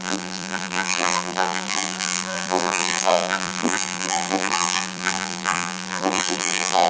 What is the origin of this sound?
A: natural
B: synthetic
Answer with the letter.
B